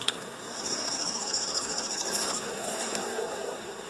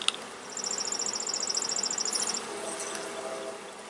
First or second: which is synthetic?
first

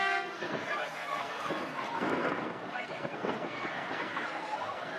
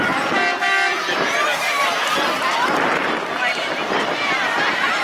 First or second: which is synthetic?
first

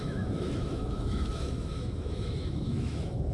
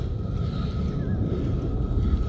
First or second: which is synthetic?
first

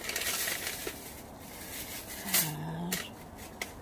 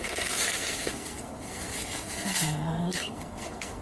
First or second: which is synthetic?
second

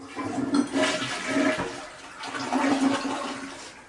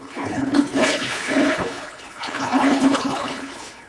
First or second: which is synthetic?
second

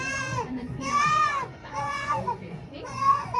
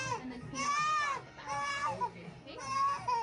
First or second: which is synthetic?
first